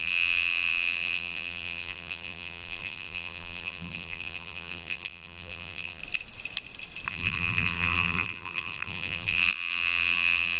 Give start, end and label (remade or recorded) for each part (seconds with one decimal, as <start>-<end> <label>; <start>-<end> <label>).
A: 0.0-6.0 remade; 6.0-7.1 recorded; 7.1-10.6 remade